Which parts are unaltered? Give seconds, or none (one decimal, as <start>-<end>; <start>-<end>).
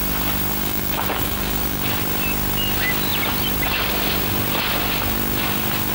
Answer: 0.0-0.6; 1.8-5.9